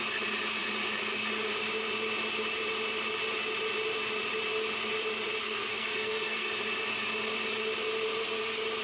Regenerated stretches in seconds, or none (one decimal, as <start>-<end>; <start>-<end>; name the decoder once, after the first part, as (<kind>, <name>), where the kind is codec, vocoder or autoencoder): 5.4-6.5 (codec, SNAC)